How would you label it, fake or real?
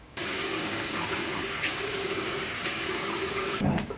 fake